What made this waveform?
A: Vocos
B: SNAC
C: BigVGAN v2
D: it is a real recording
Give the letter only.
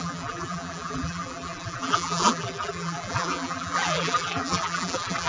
C